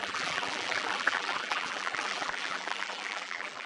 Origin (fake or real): fake